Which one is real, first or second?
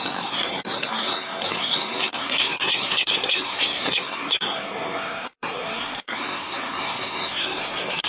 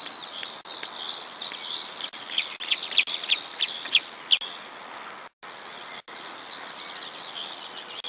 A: second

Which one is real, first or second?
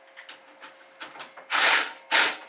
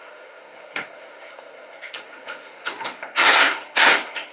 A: first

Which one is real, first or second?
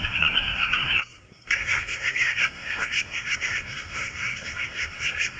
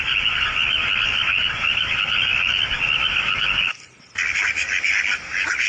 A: second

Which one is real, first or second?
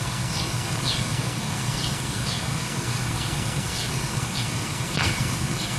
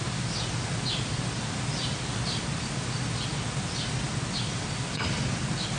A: second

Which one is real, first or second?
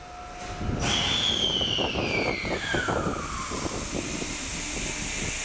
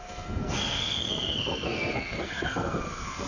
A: first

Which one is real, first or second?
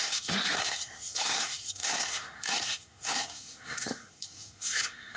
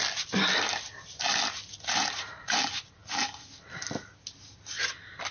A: second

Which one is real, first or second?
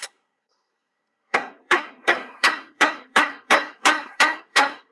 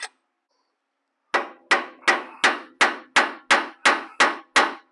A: second